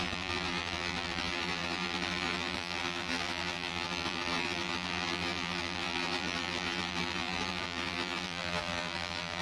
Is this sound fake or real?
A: fake